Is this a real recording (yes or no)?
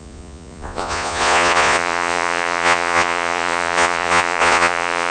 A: no